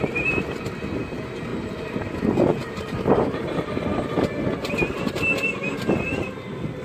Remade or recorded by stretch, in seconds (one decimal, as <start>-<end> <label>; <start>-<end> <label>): 0.0-1.5 recorded; 1.5-2.2 remade; 2.2-2.6 recorded; 2.6-3.6 remade; 3.6-6.8 recorded

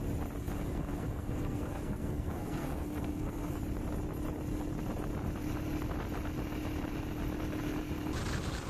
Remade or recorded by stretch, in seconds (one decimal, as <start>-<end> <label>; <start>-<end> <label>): 0.0-0.4 recorded; 0.4-3.6 remade; 3.6-8.7 recorded

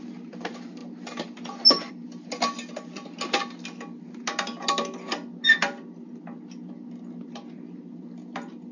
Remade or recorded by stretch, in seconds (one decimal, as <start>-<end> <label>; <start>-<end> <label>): 0.0-8.7 recorded

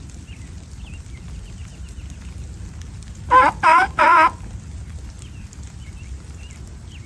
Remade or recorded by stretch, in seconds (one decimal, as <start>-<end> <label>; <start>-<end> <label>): 0.0-7.1 recorded

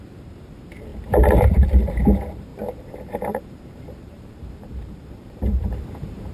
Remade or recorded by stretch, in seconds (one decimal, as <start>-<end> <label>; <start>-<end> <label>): 0.0-6.3 remade